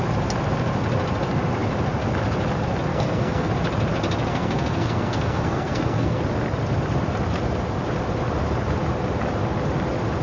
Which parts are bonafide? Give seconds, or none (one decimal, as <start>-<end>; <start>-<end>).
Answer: 0.0-2.9; 3.5-4.3; 6.2-10.2